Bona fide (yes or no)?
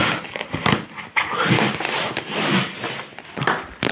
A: yes